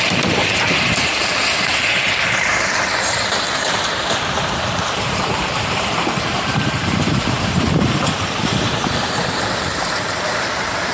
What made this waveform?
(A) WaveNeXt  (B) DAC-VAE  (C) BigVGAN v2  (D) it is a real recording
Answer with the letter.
C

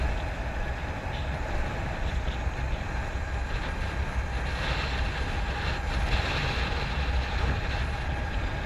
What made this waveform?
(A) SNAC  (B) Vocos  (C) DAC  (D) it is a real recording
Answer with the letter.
D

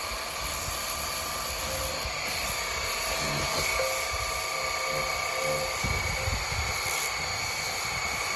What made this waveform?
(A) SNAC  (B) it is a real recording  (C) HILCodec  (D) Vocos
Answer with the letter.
B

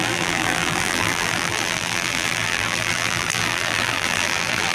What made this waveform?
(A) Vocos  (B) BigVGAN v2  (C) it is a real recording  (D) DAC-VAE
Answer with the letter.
B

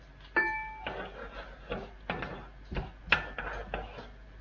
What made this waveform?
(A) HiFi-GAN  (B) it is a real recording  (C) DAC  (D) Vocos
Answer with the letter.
B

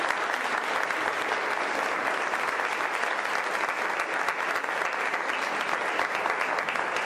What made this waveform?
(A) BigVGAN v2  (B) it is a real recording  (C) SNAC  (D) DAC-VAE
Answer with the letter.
B